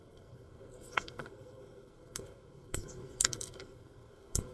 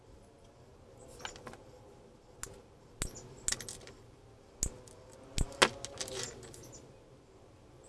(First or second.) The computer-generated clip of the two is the first